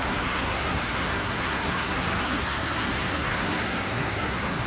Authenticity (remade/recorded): remade